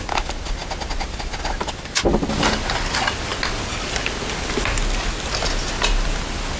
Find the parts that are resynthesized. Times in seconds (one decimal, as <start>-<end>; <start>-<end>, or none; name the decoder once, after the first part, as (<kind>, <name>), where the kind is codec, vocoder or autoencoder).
none